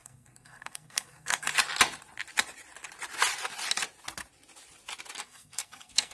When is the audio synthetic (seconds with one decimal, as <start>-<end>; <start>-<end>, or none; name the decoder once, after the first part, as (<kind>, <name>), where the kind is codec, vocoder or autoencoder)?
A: 0.0-1.5 (codec, SNAC); 5.2-6.1